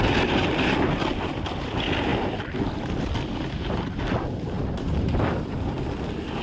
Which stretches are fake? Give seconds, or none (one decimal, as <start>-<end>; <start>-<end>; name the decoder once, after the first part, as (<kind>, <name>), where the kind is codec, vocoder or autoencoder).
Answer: none